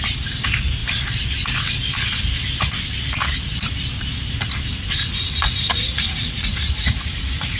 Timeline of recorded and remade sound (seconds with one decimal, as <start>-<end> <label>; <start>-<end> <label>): 0.0-5.1 recorded; 5.1-7.6 remade

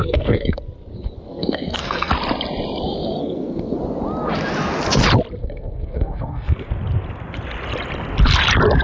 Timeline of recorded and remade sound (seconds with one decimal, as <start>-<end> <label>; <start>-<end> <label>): 0.0-0.6 remade; 0.6-1.3 recorded; 1.3-2.1 remade; 2.1-3.2 recorded; 3.2-3.8 remade; 3.8-5.4 recorded; 5.4-6.7 remade; 6.7-8.8 recorded

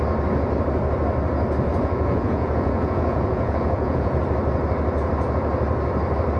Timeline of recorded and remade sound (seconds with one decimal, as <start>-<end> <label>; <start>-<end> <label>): 0.0-1.7 recorded; 1.7-4.2 remade; 4.2-6.4 recorded

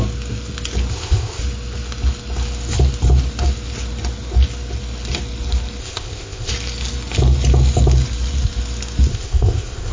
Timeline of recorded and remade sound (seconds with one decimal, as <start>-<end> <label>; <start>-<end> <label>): 0.0-0.9 recorded; 0.9-1.4 remade; 1.4-5.8 recorded; 5.8-6.5 remade; 6.5-9.1 recorded; 9.1-9.9 remade

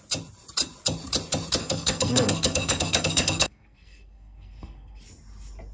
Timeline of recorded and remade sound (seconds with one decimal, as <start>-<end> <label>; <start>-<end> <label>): 0.0-1.6 recorded; 1.6-5.0 remade; 5.0-5.7 recorded

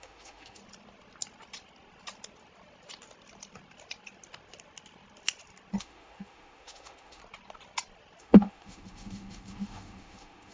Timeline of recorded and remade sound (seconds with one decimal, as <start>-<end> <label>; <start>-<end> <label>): 0.0-0.6 remade; 0.6-5.8 recorded; 5.8-7.2 remade; 7.2-8.2 recorded; 8.2-10.5 remade

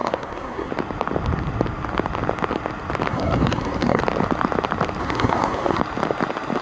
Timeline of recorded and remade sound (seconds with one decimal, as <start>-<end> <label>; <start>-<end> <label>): 0.0-0.7 remade; 0.7-3.1 recorded; 3.1-4.0 remade; 4.0-5.0 recorded; 5.0-5.8 remade; 5.8-6.6 recorded

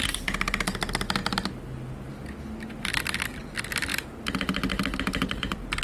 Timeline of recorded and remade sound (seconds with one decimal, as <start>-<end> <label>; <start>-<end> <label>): 0.0-5.8 recorded